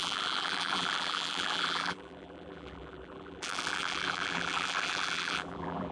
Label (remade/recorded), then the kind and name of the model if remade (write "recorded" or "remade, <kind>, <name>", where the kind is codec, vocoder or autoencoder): remade, vocoder, BigVGAN v2